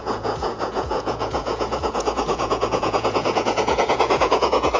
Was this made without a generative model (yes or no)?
no